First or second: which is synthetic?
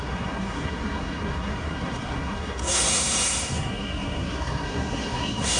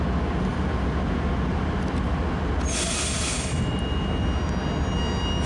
first